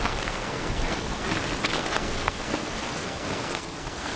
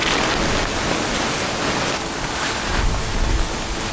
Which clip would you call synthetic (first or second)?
first